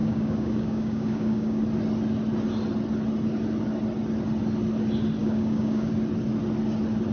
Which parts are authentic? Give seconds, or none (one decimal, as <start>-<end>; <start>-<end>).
1.6-5.2; 5.9-7.1